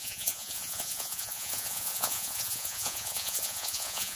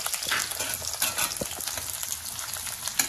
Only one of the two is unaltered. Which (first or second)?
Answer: second